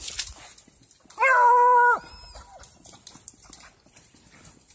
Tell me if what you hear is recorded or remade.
recorded